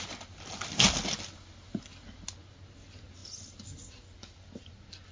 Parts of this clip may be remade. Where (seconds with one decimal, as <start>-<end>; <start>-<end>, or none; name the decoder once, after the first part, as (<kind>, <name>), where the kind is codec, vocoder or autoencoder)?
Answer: none